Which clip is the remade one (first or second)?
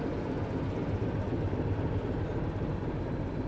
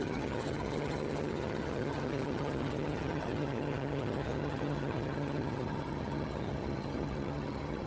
second